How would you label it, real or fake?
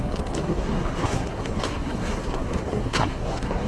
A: fake